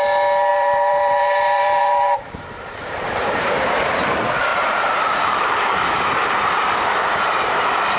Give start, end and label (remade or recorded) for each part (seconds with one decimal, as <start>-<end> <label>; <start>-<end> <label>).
0.0-0.5 recorded; 0.5-3.8 remade; 3.8-4.5 recorded; 4.5-6.0 remade; 6.0-8.0 recorded